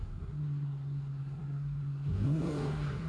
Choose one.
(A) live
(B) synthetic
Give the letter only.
B